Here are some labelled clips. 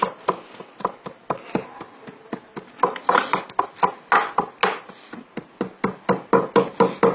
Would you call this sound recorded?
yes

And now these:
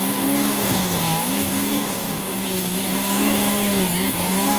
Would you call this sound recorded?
no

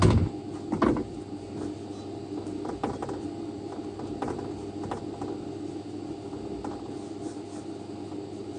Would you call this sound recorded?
yes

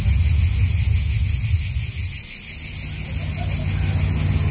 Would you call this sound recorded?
yes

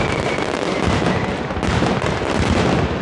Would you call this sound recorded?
yes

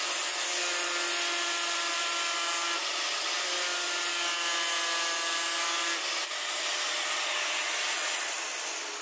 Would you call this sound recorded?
yes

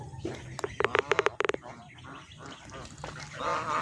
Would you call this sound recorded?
yes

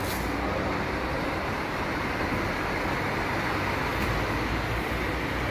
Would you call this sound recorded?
yes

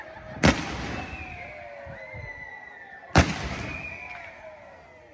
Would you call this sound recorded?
yes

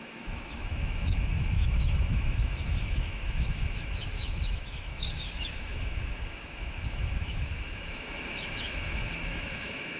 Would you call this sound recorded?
no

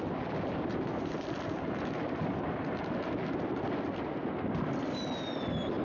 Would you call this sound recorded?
yes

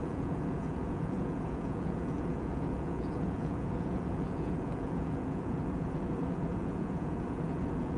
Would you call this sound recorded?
no